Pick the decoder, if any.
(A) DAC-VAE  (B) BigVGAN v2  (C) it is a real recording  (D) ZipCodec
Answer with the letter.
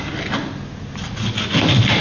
C